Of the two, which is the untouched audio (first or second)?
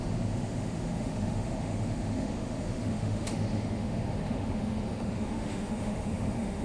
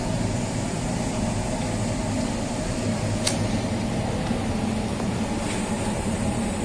second